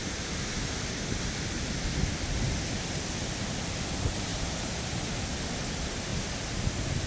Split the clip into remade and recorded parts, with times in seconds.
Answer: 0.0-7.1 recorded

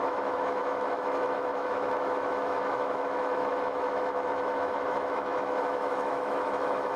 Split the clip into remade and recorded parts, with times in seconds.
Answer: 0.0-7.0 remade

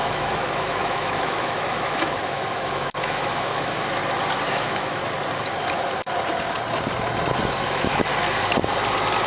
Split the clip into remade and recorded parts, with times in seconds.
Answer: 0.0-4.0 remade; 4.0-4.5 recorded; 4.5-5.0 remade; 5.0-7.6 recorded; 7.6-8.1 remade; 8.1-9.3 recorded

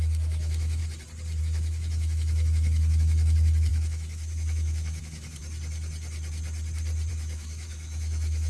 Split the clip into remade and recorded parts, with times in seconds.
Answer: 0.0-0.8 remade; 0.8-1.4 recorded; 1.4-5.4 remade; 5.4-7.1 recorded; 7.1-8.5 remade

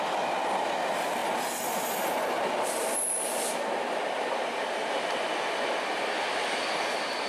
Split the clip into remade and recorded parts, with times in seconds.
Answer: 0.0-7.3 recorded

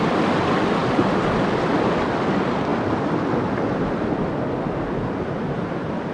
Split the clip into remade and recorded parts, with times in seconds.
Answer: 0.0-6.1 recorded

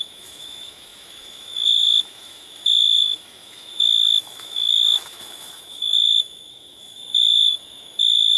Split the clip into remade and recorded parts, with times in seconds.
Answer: 0.0-8.4 remade

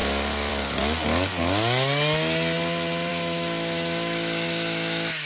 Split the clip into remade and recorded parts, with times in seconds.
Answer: 0.0-3.1 recorded; 3.1-5.3 remade